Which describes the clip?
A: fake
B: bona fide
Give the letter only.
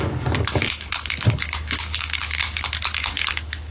A